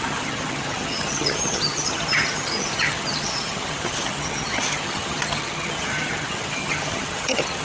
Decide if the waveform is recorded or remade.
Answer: remade